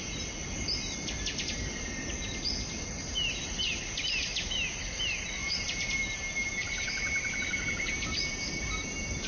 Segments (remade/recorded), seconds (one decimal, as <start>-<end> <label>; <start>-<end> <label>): 0.0-5.4 recorded; 5.4-9.3 remade